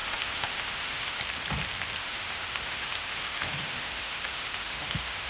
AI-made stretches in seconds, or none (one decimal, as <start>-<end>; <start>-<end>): 0.0-1.2; 2.0-5.3